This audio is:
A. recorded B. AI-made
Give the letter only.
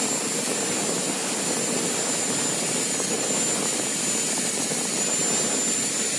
A